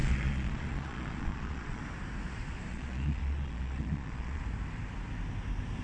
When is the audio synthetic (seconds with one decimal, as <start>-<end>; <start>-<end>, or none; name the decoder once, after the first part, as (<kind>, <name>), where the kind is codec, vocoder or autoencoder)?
0.0-1.8 (vocoder, Vocos); 2.7-4.4